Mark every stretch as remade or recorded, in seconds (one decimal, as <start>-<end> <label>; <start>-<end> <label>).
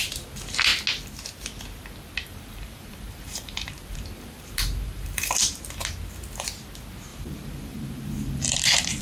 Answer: 0.0-2.3 recorded; 2.3-5.5 remade; 5.5-7.1 recorded; 7.1-9.0 remade